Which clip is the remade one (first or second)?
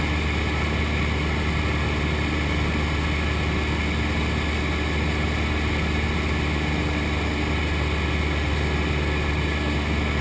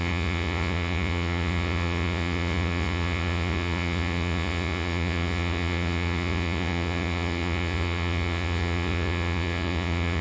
second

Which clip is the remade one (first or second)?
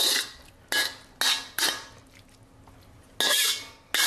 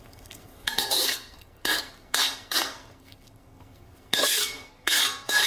second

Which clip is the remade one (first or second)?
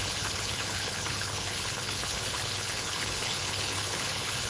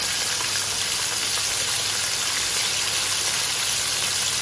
first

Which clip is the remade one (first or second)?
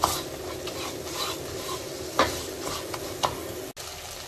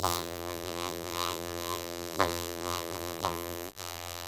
second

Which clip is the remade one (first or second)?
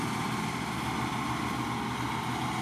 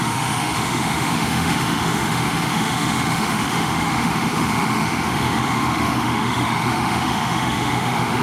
second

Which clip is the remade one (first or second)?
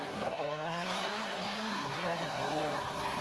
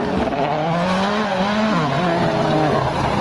first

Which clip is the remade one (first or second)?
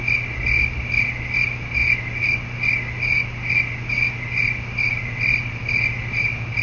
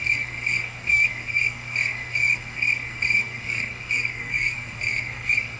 second